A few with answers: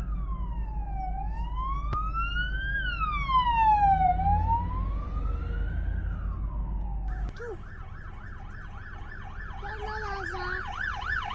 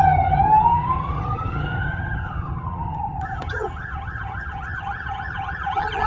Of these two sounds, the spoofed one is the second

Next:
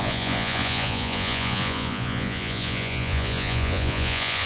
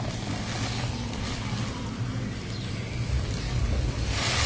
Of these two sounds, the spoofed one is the first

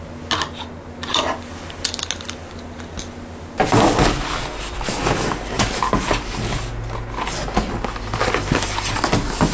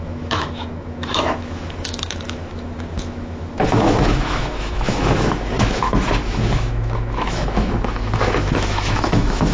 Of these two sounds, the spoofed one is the second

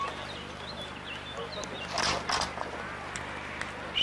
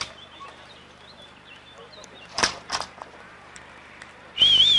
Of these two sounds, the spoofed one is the second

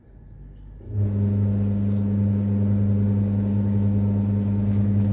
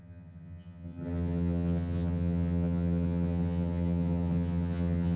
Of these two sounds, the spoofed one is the second